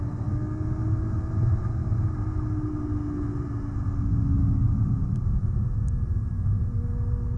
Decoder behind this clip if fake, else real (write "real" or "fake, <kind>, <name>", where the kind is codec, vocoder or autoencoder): real